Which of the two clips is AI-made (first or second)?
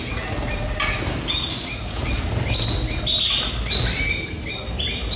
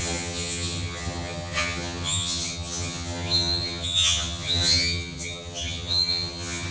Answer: second